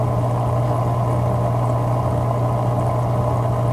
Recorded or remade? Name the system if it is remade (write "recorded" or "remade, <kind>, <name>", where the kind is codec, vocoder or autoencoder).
recorded